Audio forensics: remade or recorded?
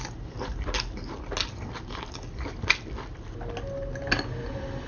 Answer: recorded